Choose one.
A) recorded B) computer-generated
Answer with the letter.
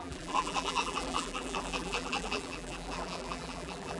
B